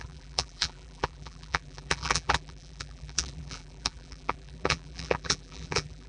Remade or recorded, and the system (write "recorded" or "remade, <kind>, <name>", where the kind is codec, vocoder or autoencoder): remade, vocoder, BigVGAN v2